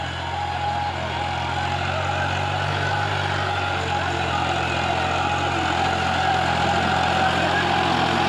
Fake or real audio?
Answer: real